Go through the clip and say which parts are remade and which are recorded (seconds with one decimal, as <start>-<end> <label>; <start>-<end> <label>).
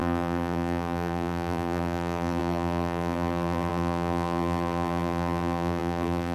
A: 0.0-6.3 remade